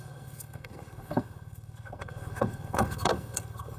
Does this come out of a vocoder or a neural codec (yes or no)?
yes